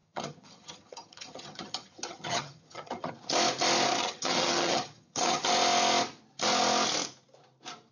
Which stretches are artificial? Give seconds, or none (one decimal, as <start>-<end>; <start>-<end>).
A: 0.0-3.1; 4.0-5.5